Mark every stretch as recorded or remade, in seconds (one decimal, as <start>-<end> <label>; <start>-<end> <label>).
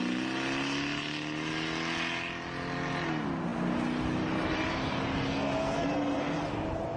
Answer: 0.0-5.3 recorded; 5.3-6.4 remade; 6.4-7.0 recorded